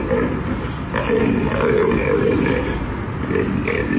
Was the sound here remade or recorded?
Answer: recorded